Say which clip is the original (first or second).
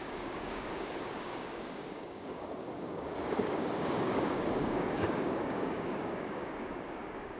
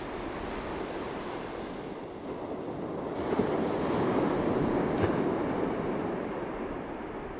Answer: second